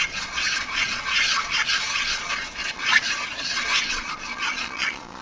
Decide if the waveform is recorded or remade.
remade